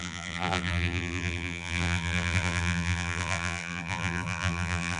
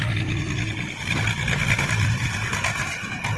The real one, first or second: second